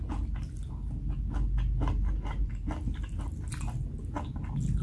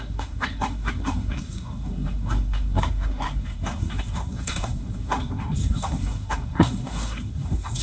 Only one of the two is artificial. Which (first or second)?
second